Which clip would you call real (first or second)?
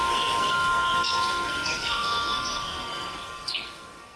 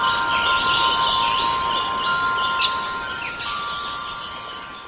second